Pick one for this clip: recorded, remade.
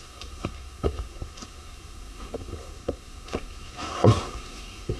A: remade